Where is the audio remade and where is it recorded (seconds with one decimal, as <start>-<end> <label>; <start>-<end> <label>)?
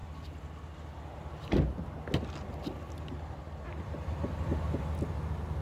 0.0-5.6 recorded